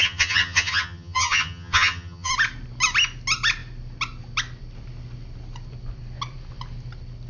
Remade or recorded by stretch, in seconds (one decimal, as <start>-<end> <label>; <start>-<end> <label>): 0.0-2.3 remade; 2.3-7.3 recorded